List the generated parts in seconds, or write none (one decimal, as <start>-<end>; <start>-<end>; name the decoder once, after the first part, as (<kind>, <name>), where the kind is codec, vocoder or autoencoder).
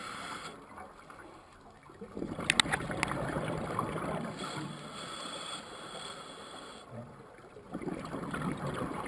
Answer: none